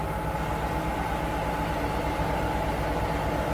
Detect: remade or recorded recorded